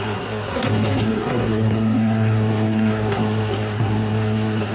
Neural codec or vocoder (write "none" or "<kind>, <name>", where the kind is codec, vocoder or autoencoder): codec, SNAC